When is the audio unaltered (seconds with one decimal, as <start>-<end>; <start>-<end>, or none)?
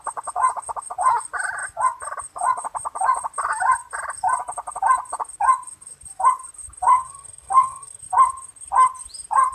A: 0.0-6.9; 8.0-9.5